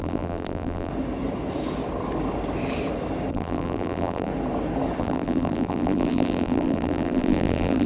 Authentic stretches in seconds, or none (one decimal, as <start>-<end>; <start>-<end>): 0.9-3.3; 4.3-5.0